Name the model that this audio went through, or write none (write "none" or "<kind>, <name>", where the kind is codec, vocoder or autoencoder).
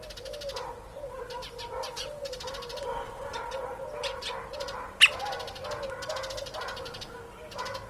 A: none